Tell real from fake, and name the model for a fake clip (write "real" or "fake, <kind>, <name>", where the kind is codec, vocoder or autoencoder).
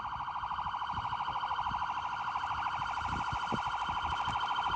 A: real